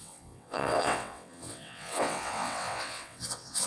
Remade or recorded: remade